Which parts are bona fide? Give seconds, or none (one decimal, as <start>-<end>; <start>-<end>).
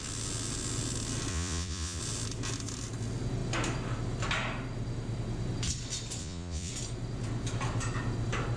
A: 0.0-1.3; 2.0-6.2; 6.7-8.6